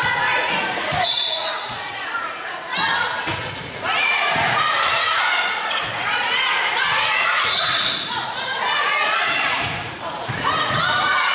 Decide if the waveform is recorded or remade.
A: remade